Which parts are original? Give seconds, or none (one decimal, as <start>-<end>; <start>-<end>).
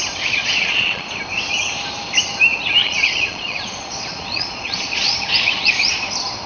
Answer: 0.0-0.4; 1.1-2.8; 6.0-6.5